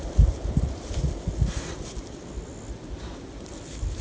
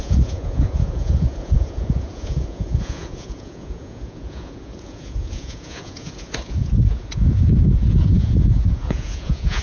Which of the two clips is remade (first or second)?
second